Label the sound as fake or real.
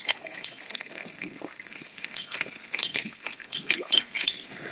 fake